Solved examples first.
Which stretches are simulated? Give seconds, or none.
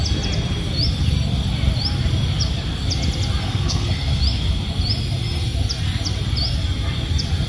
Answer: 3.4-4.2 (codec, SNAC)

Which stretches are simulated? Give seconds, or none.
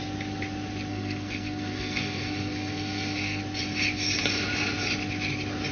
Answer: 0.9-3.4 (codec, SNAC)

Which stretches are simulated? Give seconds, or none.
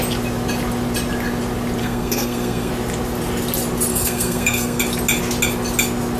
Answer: 1.8-2.7 (codec, SNAC); 3.9-4.8